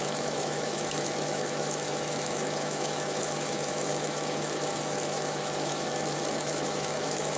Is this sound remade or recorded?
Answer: remade